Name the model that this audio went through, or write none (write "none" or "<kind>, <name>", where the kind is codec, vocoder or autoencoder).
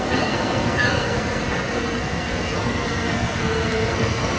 codec, SNAC